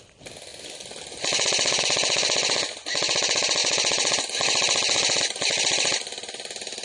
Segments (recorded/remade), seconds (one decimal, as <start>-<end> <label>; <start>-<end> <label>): 0.0-6.8 recorded